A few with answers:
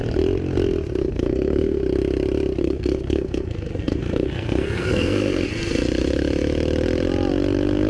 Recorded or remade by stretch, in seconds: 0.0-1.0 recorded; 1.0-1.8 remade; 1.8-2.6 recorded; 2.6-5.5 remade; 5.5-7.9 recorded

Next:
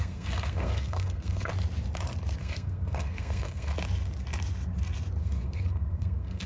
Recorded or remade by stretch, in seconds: 0.0-1.5 remade; 1.5-2.4 recorded; 2.4-3.7 remade; 3.7-5.2 recorded; 5.2-6.5 remade

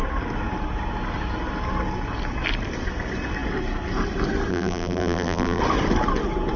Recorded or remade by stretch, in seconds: 0.0-4.5 recorded; 4.5-5.6 remade; 5.6-6.6 recorded

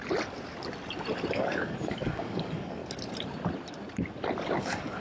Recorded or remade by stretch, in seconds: 0.0-1.3 recorded; 1.3-2.8 remade; 2.8-4.6 recorded; 4.6-5.0 remade

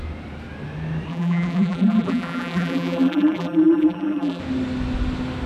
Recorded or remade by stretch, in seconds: 0.0-1.1 recorded; 1.1-4.4 remade; 4.4-5.5 recorded